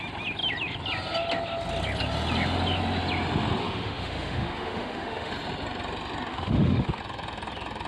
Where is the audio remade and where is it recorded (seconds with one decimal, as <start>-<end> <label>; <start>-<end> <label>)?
0.0-3.6 recorded; 3.6-5.3 remade; 5.3-6.3 recorded; 6.3-7.0 remade; 7.0-7.9 recorded